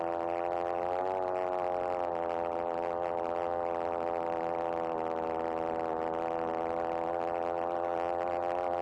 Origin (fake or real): real